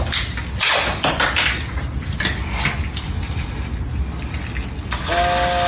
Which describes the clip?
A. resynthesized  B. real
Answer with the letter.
B